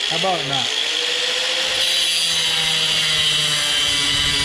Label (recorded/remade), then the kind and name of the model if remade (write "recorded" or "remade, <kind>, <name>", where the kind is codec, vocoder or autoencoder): recorded